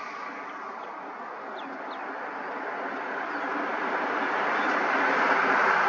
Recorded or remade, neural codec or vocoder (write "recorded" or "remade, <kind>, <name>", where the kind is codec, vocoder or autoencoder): recorded